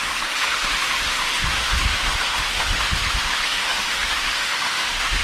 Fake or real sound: fake